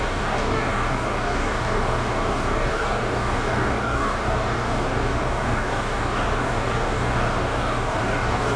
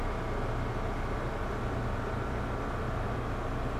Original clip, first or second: second